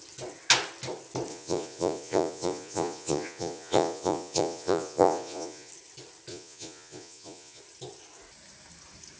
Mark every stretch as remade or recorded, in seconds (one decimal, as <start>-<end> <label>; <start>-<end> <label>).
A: 0.0-1.3 recorded; 1.3-5.7 remade; 5.7-6.3 recorded; 6.3-7.6 remade; 7.6-9.2 recorded